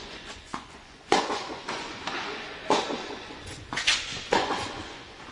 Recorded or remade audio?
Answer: remade